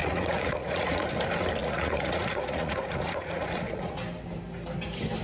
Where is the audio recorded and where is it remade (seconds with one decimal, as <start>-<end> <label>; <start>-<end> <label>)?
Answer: 0.0-1.1 remade; 1.1-1.6 recorded; 1.6-4.0 remade; 4.0-5.2 recorded